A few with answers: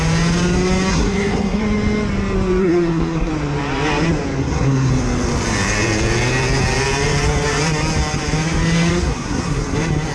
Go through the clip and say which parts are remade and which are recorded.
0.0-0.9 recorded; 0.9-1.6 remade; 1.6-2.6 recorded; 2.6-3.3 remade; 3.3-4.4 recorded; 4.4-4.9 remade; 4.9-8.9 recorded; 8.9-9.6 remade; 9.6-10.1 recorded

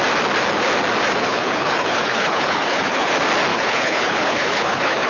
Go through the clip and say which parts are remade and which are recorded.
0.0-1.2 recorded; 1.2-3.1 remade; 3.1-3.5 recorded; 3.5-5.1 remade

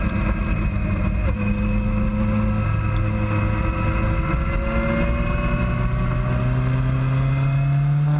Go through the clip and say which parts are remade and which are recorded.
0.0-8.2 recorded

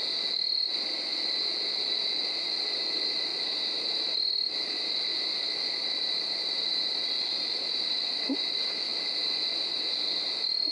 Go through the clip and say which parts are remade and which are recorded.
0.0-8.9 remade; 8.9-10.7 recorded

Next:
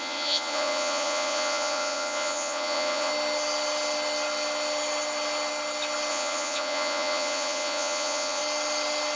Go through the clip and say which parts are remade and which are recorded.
0.0-3.1 remade; 3.1-6.1 recorded; 6.1-8.4 remade; 8.4-9.2 recorded